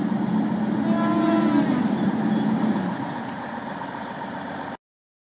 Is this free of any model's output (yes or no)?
yes